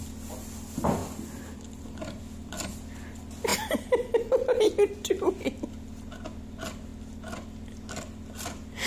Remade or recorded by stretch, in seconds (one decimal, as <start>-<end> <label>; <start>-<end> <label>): 0.0-1.0 recorded; 1.0-1.8 remade; 1.8-3.5 recorded; 3.5-4.6 remade; 4.6-8.9 recorded